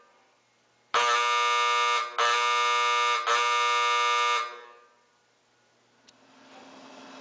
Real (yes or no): yes